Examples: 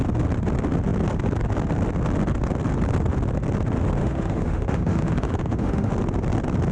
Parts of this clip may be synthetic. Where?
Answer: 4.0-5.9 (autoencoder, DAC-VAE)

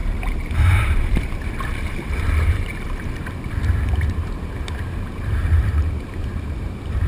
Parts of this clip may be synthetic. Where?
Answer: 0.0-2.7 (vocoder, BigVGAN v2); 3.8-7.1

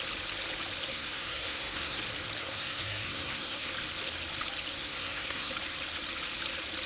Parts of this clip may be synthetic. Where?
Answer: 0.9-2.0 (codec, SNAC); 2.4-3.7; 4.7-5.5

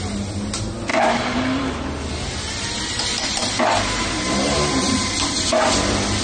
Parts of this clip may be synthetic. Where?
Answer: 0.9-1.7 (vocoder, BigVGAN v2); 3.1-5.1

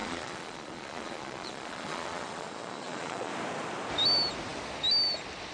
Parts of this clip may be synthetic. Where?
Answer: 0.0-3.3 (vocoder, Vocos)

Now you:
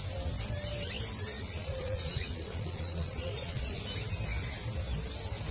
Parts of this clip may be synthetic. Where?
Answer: 1.4-3.8 (vocoder, Vocos)

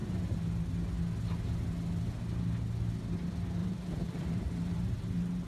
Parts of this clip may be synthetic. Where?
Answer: 3.6-5.5 (vocoder, BigVGAN v2)

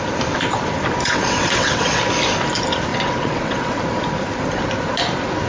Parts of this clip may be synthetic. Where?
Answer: 1.0-2.0 (vocoder, WaveNeXt); 2.9-3.8